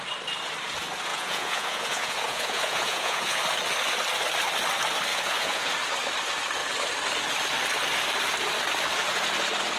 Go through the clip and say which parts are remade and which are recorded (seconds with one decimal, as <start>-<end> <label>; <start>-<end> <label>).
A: 0.0-1.1 recorded; 1.1-3.4 remade; 3.4-5.1 recorded; 5.1-5.7 remade; 5.7-9.8 recorded